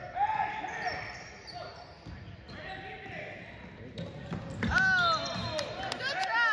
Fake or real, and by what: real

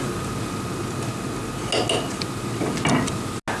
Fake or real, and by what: real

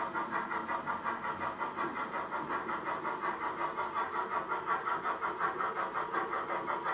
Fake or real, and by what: real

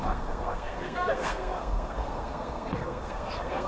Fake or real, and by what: fake, codec, SNAC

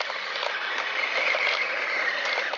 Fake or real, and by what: real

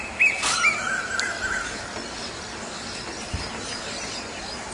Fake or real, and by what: real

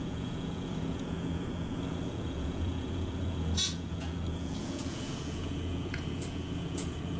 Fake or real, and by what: fake, vocoder, Vocos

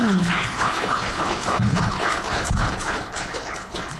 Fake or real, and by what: fake, codec, HILCodec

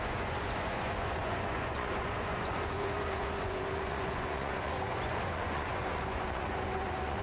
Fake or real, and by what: fake, vocoder, Vocos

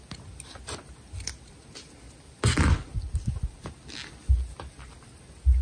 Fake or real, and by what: real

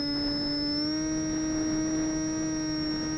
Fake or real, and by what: real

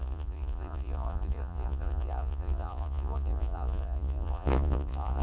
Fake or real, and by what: fake, vocoder, Vocos